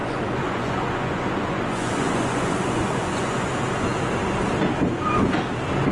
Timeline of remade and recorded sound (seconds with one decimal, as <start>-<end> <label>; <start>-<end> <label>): 0.0-3.5 remade; 3.5-5.9 recorded